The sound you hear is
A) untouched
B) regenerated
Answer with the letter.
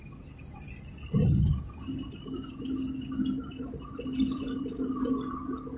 A